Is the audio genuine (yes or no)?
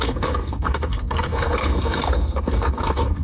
no